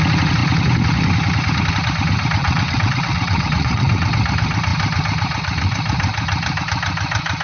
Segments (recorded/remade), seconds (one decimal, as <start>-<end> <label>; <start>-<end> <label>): 0.0-2.4 recorded; 2.4-4.1 remade; 4.1-7.4 recorded